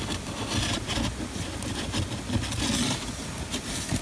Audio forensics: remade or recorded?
recorded